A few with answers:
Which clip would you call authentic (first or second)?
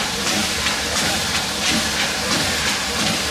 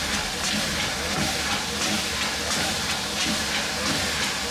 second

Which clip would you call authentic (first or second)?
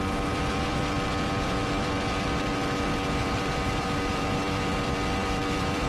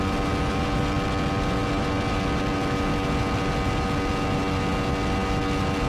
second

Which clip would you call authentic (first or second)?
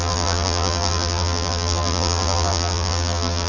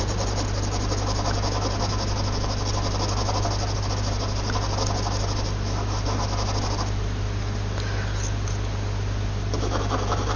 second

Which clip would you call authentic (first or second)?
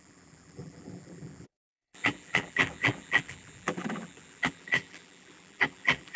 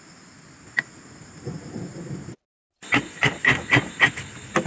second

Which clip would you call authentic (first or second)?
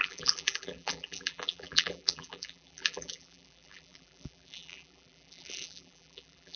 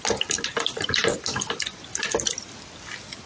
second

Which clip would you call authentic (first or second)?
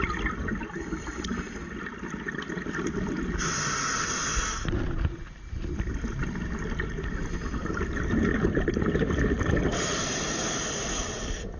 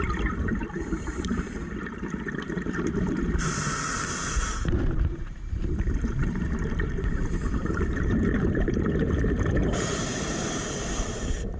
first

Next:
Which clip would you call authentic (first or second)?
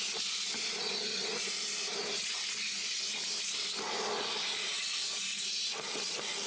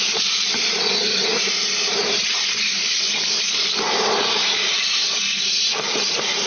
first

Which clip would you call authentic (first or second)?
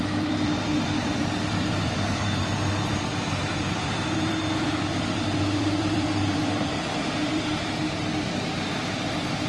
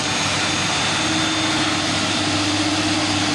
second